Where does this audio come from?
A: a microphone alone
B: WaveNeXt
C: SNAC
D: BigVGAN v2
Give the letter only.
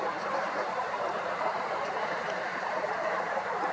D